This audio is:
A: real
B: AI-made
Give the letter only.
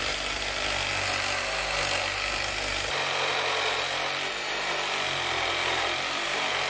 A